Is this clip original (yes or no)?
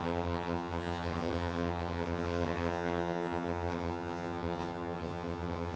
no